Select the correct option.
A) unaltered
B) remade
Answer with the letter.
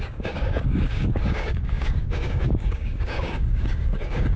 B